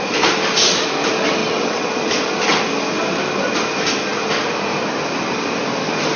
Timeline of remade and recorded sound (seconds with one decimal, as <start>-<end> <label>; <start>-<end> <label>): 0.0-1.4 recorded; 1.4-1.9 remade; 1.9-6.2 recorded